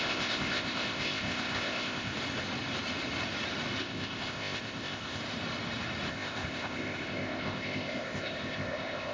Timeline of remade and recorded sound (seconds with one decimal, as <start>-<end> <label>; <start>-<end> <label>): 0.0-2.1 remade; 2.1-3.8 recorded; 3.8-5.2 remade; 5.2-6.1 recorded; 6.1-9.1 remade